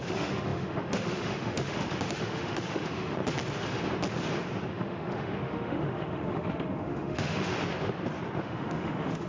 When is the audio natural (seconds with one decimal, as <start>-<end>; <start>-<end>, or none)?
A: 3.2-4.7; 7.5-8.4